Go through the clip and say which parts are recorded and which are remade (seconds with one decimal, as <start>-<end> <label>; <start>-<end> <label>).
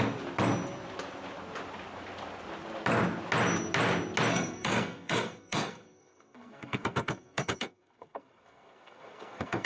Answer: 0.0-4.3 recorded; 4.3-9.7 remade